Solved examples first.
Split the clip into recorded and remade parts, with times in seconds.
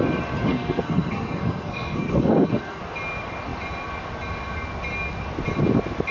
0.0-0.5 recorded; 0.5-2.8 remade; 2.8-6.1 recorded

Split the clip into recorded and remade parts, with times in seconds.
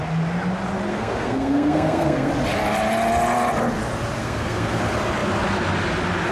0.0-0.9 recorded; 0.9-2.3 remade; 2.3-4.2 recorded; 4.2-4.8 remade; 4.8-6.3 recorded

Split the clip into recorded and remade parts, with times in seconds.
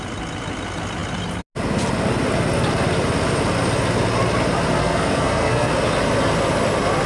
0.0-4.8 recorded; 4.8-5.7 remade; 5.7-7.1 recorded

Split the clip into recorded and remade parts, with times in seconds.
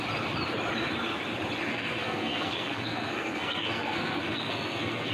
0.0-1.7 recorded; 1.7-5.1 remade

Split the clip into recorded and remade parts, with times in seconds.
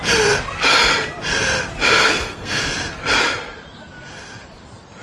0.0-1.9 recorded; 1.9-2.6 remade; 2.6-5.0 recorded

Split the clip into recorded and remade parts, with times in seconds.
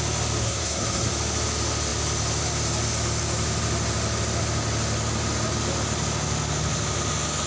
0.0-0.4 recorded; 0.4-1.1 remade; 1.1-7.5 recorded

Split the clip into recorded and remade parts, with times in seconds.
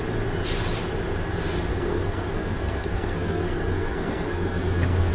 0.0-1.7 recorded; 1.7-5.1 remade